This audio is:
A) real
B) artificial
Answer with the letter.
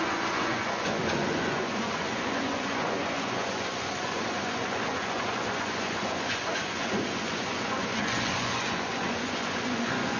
B